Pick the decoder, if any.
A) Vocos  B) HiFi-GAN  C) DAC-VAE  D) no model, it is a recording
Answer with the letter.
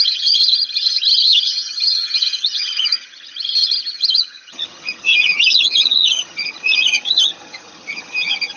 B